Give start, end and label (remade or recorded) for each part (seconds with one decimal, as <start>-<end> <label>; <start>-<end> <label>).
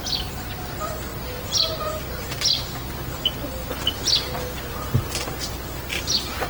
0.0-6.5 recorded